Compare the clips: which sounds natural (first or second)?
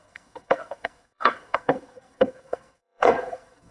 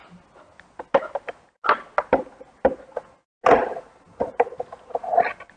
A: second